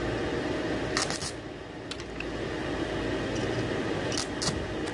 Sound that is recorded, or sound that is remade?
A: recorded